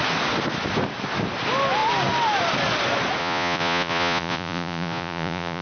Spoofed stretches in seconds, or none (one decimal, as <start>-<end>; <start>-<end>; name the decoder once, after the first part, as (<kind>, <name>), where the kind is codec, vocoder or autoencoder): 3.2-5.6 (vocoder, Vocos)